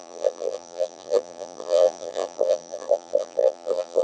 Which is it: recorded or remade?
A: remade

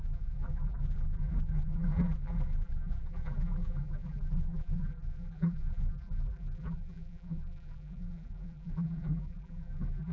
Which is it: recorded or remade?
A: remade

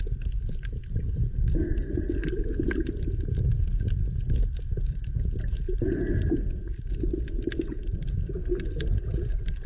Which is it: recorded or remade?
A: recorded